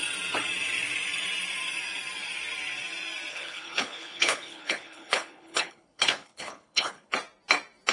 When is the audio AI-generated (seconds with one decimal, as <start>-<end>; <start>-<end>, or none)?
3.3-7.1